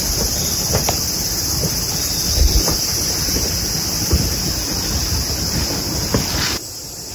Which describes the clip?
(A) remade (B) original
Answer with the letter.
B